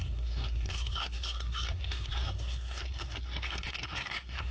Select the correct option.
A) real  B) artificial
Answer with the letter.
B